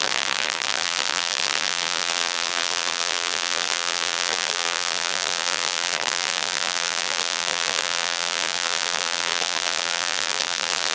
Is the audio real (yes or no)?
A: no